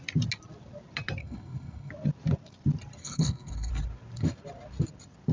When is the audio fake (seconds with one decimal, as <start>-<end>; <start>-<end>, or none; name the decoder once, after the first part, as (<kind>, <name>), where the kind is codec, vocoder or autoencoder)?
1.2-1.9 (codec, SNAC); 3.0-3.7